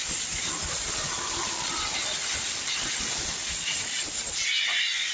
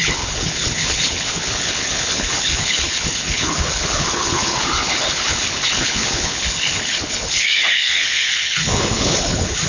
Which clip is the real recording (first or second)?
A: first